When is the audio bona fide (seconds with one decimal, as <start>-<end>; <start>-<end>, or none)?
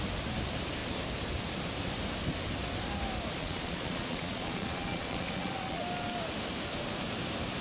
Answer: 0.0-3.4; 5.8-7.6